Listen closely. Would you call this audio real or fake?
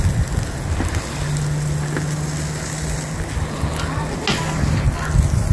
real